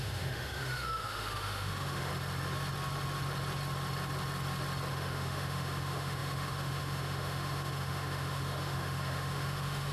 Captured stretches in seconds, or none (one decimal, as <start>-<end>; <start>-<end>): 2.1-4.9